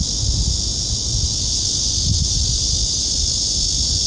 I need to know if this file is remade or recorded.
recorded